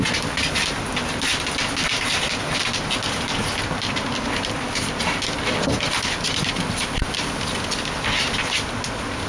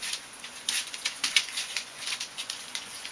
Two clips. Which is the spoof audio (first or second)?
second